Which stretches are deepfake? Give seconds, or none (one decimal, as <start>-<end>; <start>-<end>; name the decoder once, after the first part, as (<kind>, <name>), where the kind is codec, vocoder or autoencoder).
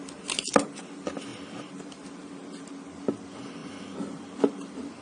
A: 3.6-4.2 (vocoder, BigVGAN v2)